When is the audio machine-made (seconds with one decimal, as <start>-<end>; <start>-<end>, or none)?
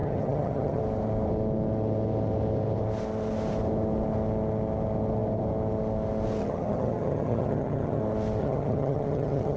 0.0-0.8; 6.4-8.0; 8.4-9.6